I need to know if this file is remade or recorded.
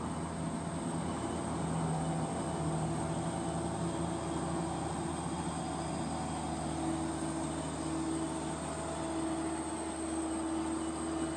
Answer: recorded